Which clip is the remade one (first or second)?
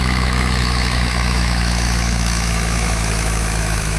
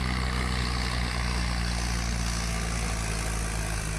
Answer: first